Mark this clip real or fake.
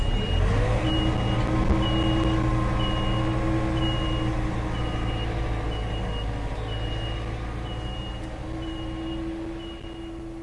real